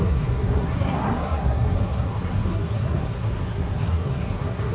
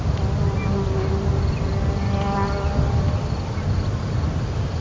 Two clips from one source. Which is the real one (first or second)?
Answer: second